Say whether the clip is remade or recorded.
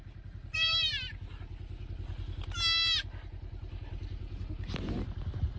recorded